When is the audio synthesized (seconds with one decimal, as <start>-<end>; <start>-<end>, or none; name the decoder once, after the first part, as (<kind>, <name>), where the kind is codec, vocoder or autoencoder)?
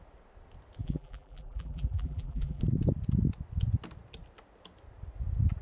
0.8-2.6 (vocoder, BigVGAN v2)